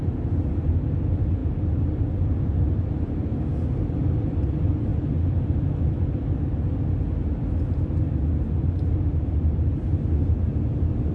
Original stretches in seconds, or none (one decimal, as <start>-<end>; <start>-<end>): 0.0-11.1